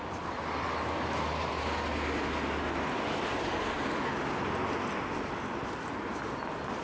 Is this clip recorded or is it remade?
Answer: recorded